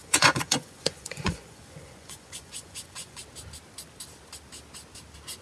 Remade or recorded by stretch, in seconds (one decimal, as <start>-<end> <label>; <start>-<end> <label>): 0.0-3.2 remade; 3.2-5.4 recorded